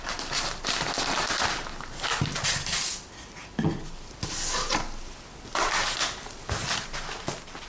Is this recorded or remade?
recorded